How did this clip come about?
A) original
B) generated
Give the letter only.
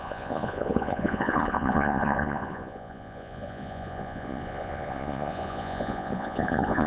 B